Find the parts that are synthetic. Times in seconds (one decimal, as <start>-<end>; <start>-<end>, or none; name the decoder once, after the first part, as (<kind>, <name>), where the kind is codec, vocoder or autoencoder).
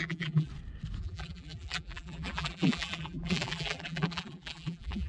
0.0-0.5 (vocoder, BigVGAN v2); 1.0-5.1